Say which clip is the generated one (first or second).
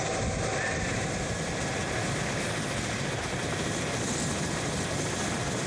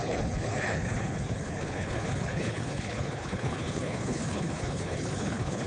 second